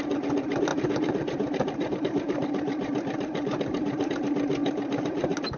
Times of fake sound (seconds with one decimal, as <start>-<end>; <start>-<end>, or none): 0.7-4.1